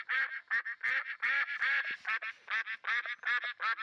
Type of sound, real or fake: real